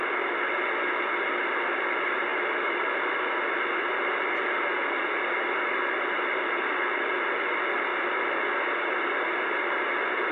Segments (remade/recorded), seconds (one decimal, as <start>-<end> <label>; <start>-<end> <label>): 0.0-2.3 recorded; 2.3-4.5 remade; 4.5-10.3 recorded